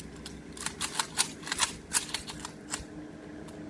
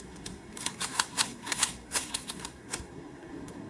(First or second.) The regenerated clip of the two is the second